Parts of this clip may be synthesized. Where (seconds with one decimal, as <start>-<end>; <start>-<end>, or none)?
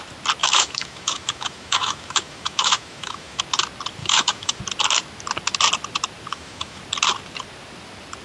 0.4-3.4; 4.0-4.6; 6.3-6.8